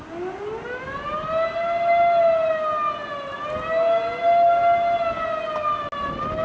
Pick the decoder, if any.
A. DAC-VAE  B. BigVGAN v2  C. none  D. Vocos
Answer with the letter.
C